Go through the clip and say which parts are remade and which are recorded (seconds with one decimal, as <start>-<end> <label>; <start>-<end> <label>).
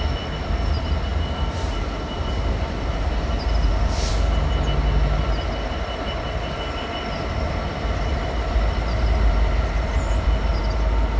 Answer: 0.0-1.1 recorded; 1.1-2.3 remade; 2.3-2.9 recorded; 2.9-4.1 remade; 4.1-8.1 recorded; 8.1-10.6 remade; 10.6-11.2 recorded